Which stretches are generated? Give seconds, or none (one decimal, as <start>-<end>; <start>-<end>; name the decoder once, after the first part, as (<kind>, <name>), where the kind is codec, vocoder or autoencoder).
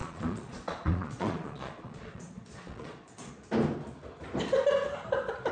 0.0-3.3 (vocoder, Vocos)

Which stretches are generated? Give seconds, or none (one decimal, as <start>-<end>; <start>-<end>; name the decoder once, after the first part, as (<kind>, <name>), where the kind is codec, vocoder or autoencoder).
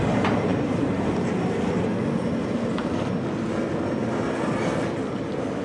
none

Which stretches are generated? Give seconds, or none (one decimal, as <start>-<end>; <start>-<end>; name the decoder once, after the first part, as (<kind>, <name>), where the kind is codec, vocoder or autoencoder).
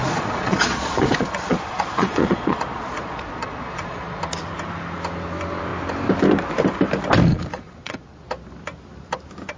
0.0-4.2 (vocoder, Vocos); 7.3-8.2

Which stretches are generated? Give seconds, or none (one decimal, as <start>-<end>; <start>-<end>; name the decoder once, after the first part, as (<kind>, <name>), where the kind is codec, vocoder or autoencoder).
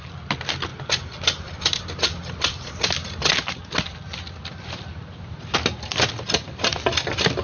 none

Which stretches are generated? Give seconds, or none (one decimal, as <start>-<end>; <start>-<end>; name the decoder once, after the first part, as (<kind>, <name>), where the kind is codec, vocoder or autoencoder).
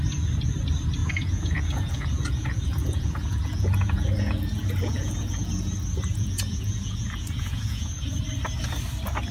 1.0-5.5 (vocoder, Vocos); 6.1-8.2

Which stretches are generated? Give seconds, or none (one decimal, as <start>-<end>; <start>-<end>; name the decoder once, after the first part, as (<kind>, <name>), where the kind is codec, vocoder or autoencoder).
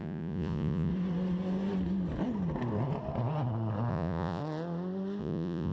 0.0-0.9 (vocoder, Vocos); 3.9-4.4; 5.2-5.7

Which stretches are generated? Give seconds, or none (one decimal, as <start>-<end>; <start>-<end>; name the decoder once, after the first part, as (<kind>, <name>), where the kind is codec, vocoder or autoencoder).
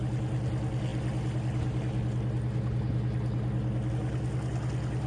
none